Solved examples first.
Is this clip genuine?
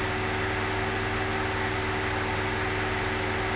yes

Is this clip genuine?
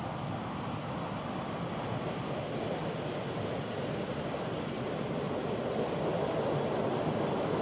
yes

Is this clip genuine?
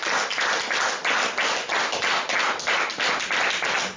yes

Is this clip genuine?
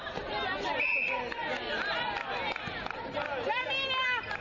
yes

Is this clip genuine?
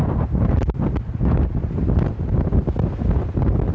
yes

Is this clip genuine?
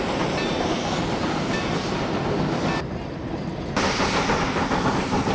yes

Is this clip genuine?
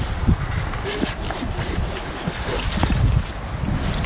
yes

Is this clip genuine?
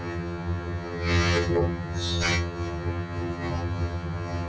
no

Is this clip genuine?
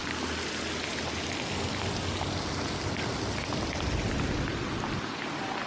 yes